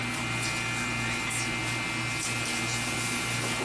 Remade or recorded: recorded